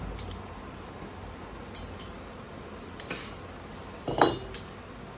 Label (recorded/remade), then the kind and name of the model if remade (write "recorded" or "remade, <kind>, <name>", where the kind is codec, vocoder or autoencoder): recorded